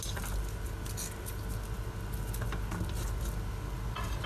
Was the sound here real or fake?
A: real